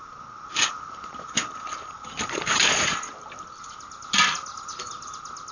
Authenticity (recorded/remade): recorded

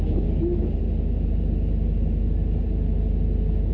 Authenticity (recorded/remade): recorded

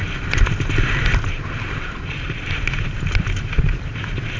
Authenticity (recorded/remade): recorded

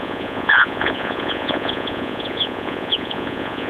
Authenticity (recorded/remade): remade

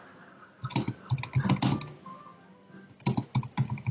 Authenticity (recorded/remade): recorded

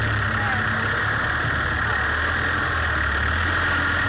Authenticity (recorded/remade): recorded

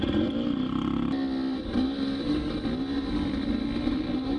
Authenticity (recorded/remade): recorded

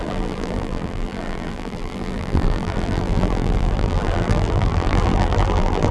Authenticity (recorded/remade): remade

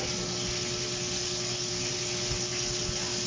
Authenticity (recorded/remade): recorded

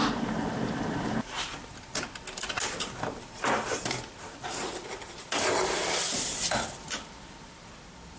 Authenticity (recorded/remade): recorded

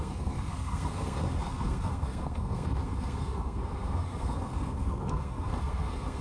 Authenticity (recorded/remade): remade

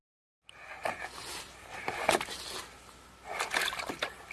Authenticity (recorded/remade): recorded